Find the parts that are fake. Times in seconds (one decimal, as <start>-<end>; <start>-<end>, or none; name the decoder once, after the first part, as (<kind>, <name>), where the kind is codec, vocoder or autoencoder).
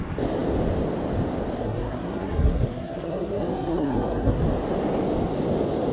1.6-4.4 (codec, SNAC)